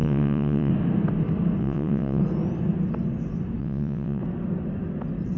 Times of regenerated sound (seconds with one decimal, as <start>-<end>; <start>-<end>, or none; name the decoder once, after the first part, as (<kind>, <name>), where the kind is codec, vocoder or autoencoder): 0.0-0.7 (vocoder, WaveNeXt); 1.6-2.2; 3.6-4.2